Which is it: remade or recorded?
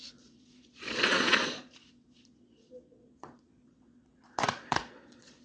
remade